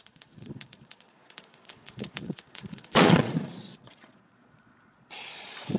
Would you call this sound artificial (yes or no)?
yes